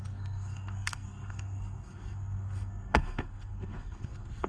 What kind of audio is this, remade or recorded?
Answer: remade